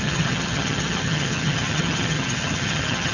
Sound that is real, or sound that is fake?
fake